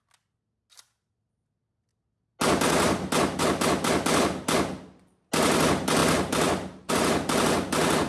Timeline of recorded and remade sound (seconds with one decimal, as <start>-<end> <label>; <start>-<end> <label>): 0.0-8.1 recorded